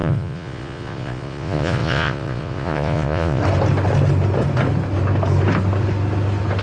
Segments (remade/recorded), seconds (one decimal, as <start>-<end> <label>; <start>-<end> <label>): 0.0-3.4 remade; 3.4-6.6 recorded